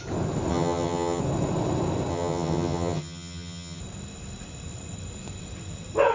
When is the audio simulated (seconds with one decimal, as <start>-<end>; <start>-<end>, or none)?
0.5-1.2; 2.1-3.8